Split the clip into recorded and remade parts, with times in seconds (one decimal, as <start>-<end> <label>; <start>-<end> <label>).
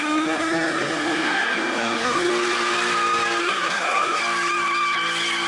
0.0-2.3 remade; 2.3-3.4 recorded; 3.4-4.2 remade; 4.2-5.5 recorded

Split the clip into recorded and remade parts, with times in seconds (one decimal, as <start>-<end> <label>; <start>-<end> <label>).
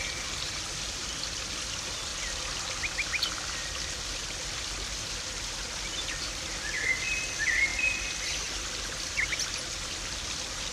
0.0-10.7 recorded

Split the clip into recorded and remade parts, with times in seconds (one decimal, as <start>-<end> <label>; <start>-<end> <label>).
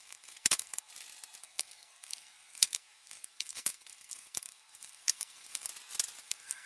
0.0-0.9 remade; 0.9-1.4 recorded; 1.4-5.7 remade; 5.7-6.2 recorded; 6.2-6.7 remade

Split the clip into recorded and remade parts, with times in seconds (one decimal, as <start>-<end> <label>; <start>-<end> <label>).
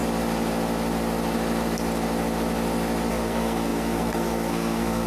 0.0-3.1 recorded; 3.1-5.1 remade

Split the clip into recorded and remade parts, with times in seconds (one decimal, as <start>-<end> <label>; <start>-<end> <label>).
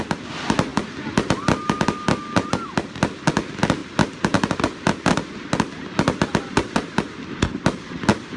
0.0-8.4 recorded